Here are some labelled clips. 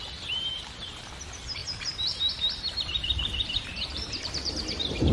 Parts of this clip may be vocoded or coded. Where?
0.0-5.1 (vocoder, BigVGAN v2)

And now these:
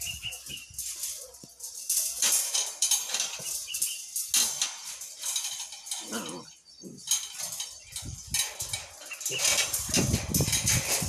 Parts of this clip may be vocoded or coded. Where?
2.8-3.8 (vocoder, BigVGAN v2); 9.5-10.0

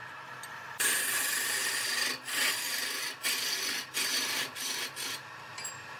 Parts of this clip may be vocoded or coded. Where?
none

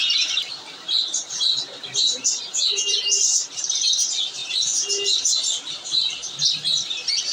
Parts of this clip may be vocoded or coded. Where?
0.0-3.0 (vocoder, BigVGAN v2); 3.6-4.4; 5.7-6.2

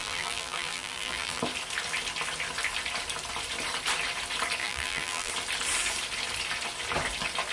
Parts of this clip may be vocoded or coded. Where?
0.0-1.4 (vocoder, BigVGAN v2); 4.6-5.3

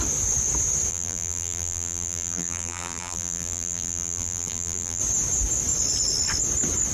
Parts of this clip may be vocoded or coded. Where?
0.9-5.0 (vocoder, BigVGAN v2)